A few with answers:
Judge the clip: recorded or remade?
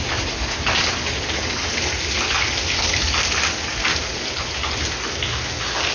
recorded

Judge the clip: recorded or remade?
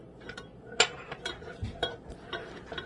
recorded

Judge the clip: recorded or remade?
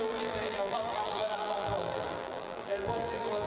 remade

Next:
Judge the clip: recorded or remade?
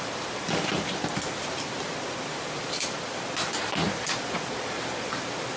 remade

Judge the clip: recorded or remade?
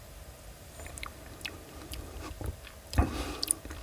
remade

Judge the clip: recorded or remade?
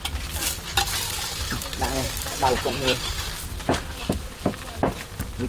remade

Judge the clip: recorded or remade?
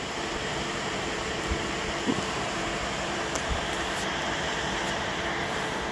remade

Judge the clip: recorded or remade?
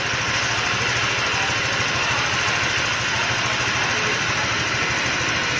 recorded